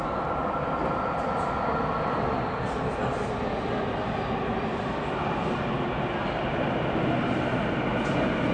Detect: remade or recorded recorded